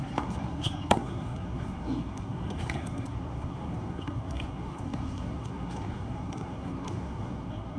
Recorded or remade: remade